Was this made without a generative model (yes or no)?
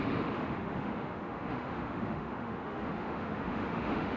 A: no